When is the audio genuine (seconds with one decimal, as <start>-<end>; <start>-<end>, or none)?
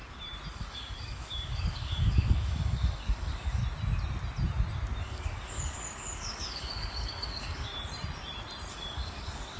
0.0-0.5; 3.6-5.0; 7.7-8.7